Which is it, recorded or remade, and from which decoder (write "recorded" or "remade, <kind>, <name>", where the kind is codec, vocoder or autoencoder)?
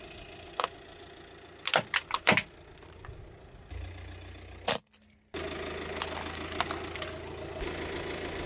recorded